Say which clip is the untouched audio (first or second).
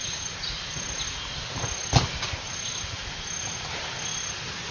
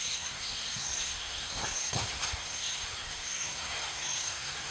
first